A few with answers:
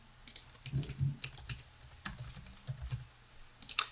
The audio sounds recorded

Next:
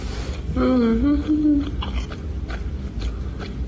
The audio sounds recorded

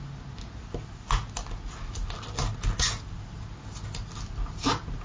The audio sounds recorded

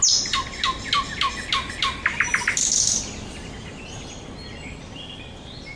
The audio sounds recorded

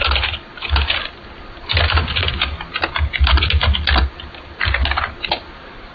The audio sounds recorded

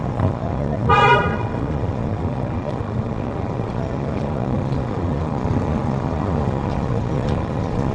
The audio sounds remade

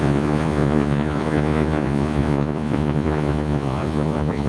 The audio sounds remade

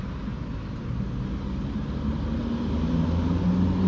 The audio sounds recorded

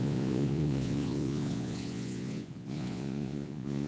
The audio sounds remade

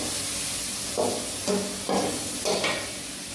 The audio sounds recorded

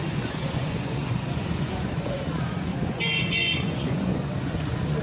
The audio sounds remade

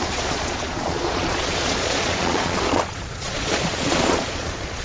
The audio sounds remade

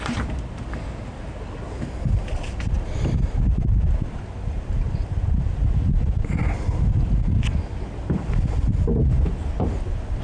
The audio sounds recorded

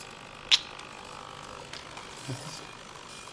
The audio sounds recorded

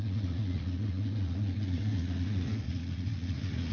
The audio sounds remade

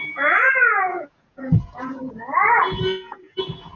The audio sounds remade